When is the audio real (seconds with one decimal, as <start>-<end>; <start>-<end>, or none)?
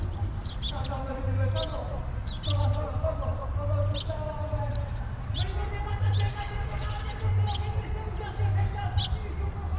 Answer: 0.0-6.3; 7.3-9.8